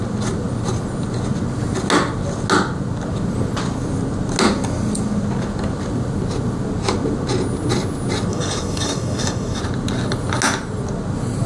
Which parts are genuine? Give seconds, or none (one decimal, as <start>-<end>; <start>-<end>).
0.0-8.3; 9.6-11.5